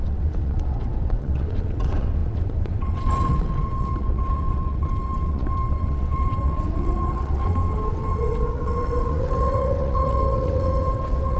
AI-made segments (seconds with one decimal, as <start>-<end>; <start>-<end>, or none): 0.0-11.4